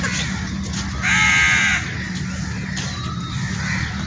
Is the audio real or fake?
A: real